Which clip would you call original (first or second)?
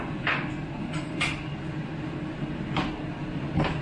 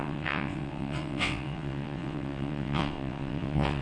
first